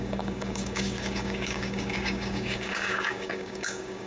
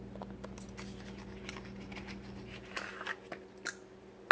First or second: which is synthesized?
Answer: first